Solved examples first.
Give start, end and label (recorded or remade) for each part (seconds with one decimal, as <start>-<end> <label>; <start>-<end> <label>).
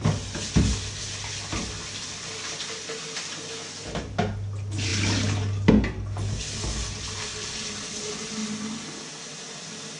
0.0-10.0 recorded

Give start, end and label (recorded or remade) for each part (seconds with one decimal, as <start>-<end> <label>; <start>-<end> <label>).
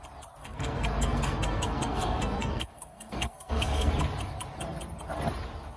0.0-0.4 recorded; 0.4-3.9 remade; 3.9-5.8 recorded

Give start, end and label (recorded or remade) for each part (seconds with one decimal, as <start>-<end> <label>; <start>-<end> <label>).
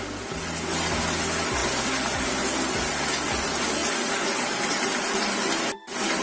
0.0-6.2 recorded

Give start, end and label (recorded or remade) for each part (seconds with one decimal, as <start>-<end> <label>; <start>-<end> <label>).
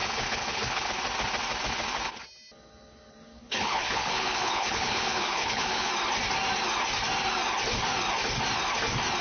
0.0-0.9 remade; 0.9-3.4 recorded; 3.4-5.9 remade; 5.9-9.2 recorded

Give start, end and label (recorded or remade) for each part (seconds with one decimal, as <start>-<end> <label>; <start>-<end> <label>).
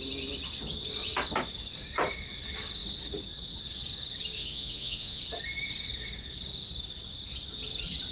0.0-4.4 recorded; 4.4-5.2 remade; 5.2-8.1 recorded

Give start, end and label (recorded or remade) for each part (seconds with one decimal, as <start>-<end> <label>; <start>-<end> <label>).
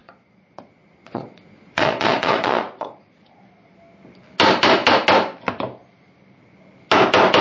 0.0-3.4 remade; 3.4-7.4 recorded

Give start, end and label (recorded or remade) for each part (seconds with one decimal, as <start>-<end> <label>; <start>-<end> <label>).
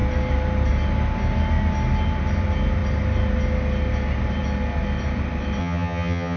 0.0-5.6 recorded; 5.6-6.4 remade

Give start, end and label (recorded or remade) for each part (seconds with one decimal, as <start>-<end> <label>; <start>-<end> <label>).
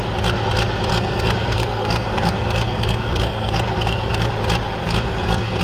0.0-0.9 recorded; 0.9-4.3 remade; 4.3-4.8 recorded; 4.8-5.6 remade